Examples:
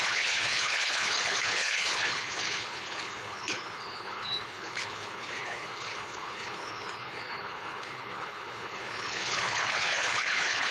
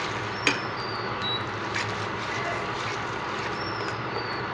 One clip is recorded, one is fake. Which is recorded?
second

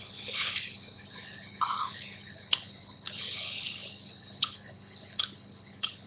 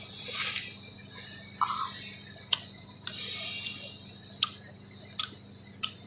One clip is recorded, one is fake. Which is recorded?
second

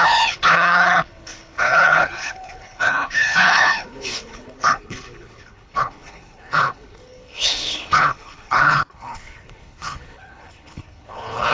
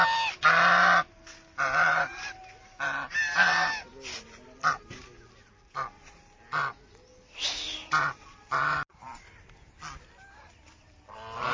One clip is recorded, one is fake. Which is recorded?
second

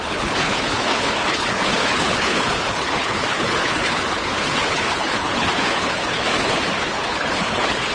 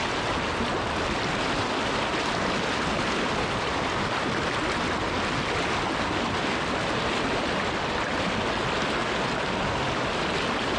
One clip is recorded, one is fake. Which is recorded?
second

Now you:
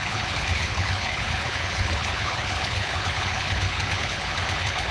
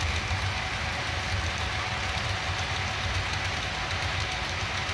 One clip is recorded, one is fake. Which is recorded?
second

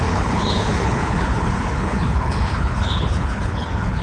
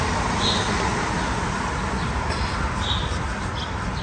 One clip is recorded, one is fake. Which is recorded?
second